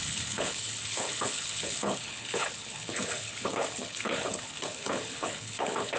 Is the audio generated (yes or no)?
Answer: yes